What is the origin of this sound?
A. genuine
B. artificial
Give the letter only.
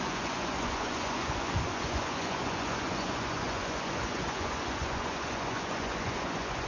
B